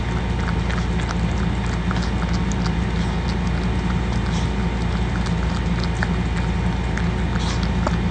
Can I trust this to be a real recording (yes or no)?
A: yes